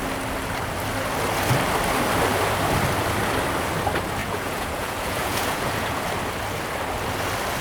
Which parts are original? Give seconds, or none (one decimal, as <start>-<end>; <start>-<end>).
0.0-4.2; 6.0-7.6